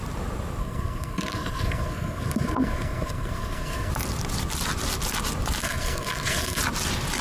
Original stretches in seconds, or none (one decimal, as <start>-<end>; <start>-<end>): 0.0-0.6; 3.9-5.6; 6.6-7.2